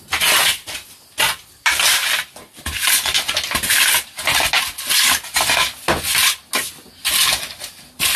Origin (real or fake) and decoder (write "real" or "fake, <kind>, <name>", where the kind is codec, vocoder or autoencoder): real